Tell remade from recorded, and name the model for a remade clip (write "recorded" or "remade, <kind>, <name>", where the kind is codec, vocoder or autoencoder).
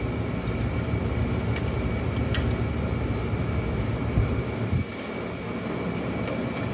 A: recorded